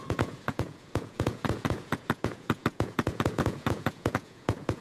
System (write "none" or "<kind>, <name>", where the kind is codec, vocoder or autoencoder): vocoder, Vocos